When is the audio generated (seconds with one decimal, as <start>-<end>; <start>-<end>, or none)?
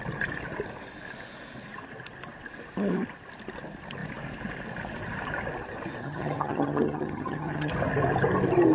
6.0-7.7